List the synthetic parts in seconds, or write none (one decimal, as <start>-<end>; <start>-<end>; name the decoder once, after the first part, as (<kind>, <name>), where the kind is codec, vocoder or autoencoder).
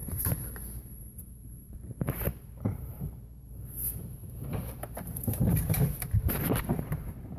0.0-7.4 (vocoder, BigVGAN v2)